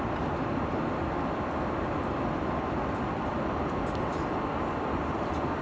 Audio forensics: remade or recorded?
recorded